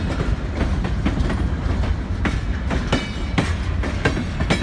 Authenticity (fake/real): real